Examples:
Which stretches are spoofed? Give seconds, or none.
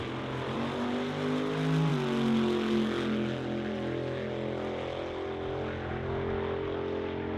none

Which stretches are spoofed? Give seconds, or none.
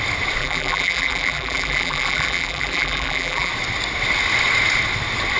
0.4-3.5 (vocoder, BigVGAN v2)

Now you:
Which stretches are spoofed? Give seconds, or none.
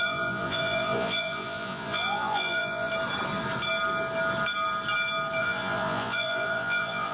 0.0-2.9 (vocoder, Vocos); 5.4-7.1